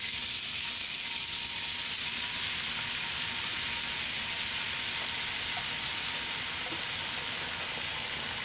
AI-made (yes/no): no